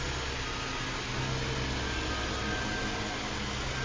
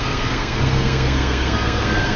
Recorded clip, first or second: first